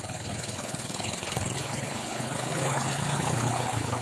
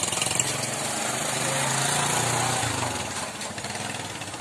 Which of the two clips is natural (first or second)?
second